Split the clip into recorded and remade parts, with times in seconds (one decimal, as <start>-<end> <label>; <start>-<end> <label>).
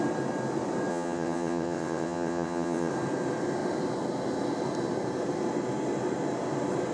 0.0-0.9 recorded; 0.9-2.9 remade; 2.9-6.9 recorded